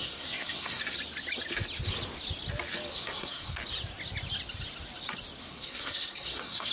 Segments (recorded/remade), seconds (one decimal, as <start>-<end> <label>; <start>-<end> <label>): 0.0-0.8 remade; 0.8-2.9 recorded; 2.9-3.6 remade; 3.6-5.4 recorded; 5.4-6.7 remade